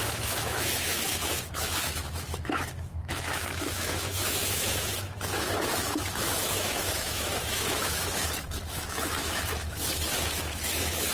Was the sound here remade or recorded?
remade